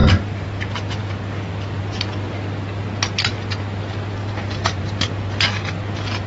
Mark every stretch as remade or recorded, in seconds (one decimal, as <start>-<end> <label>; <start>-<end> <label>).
0.0-0.6 remade; 0.6-4.2 recorded; 4.2-5.3 remade; 5.3-6.3 recorded